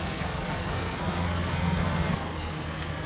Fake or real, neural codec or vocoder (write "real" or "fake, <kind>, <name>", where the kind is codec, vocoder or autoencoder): fake, codec, SNAC